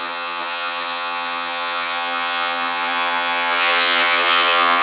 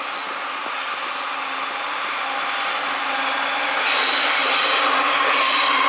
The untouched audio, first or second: second